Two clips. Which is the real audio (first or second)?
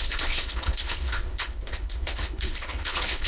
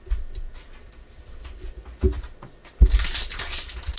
second